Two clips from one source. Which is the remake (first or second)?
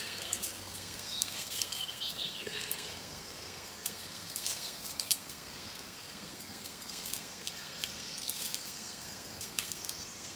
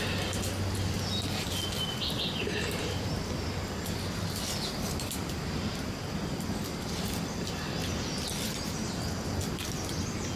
first